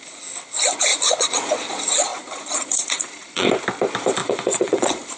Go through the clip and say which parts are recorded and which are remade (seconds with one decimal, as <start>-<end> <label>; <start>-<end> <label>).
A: 0.0-0.9 recorded; 0.9-1.7 remade; 1.7-2.1 recorded; 2.1-3.5 remade; 3.5-4.2 recorded; 4.2-5.2 remade